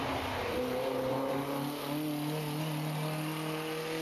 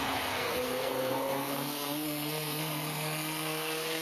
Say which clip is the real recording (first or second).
first